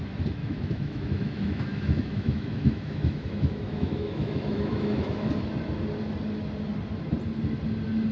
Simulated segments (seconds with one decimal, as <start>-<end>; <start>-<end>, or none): 0.4-5.3